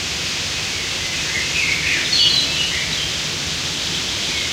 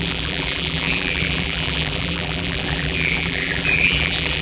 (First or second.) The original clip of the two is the first